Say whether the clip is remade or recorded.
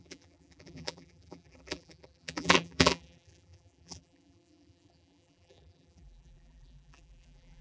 remade